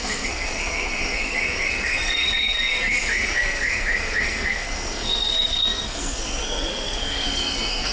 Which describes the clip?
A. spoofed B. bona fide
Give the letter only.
A